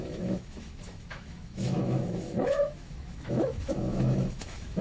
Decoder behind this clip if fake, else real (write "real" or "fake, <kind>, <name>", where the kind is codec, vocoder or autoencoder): fake, autoencoder, DAC-VAE